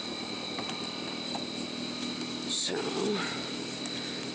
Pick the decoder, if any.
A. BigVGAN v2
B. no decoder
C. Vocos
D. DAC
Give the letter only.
B